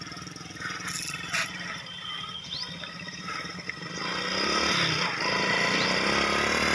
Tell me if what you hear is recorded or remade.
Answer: recorded